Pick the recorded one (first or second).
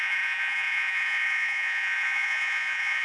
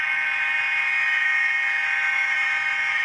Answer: second